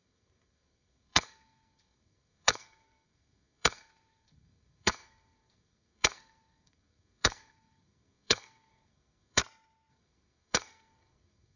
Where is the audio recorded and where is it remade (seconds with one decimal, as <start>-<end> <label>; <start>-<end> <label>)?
0.0-9.4 remade; 9.4-9.9 recorded; 9.9-11.6 remade